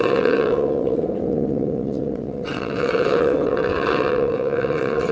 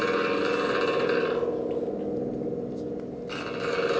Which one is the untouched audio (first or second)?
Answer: second